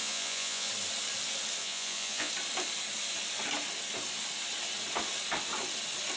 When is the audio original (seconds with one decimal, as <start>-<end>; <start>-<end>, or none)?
0.7-1.6; 2.3-6.2